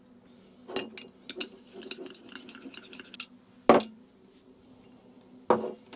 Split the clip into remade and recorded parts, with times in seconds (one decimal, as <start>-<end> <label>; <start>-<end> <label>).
0.0-6.0 recorded